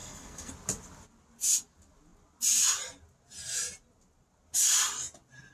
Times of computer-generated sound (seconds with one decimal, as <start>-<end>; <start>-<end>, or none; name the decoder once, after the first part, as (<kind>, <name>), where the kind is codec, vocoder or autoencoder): 0.0-0.5 (codec, SNAC)